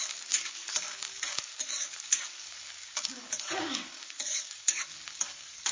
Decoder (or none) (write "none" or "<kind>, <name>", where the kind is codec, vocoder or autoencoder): codec, DAC